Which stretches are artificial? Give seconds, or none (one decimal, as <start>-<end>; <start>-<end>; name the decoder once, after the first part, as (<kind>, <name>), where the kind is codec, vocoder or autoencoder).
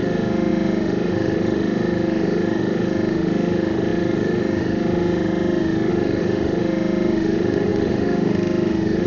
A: 0.0-9.1 (autoencoder, DAC-VAE)